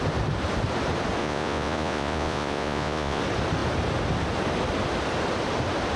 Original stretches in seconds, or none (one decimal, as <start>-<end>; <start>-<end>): 0.0-1.2; 3.2-6.0